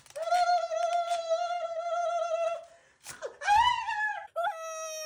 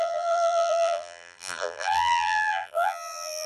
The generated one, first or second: second